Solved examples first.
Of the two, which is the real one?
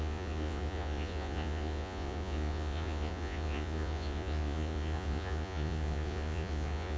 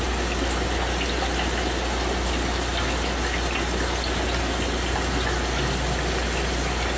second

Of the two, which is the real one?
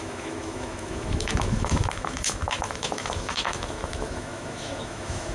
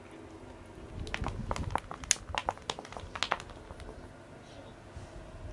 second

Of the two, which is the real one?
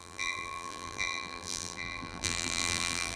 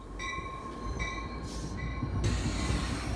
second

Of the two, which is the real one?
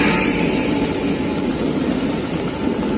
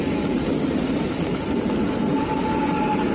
first